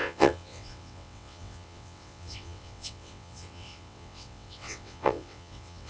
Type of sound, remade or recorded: remade